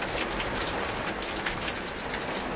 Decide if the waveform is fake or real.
real